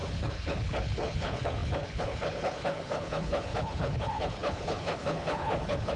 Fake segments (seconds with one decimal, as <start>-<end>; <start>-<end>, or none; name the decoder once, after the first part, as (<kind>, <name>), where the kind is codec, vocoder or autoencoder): 0.0-6.0 (codec, HILCodec)